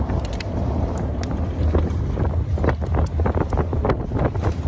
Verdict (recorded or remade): recorded